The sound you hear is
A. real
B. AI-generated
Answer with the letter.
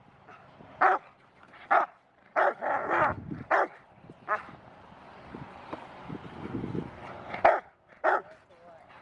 A